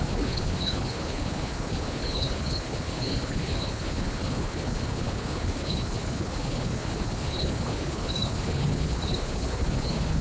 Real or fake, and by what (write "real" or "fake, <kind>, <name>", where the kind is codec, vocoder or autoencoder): fake, codec, HILCodec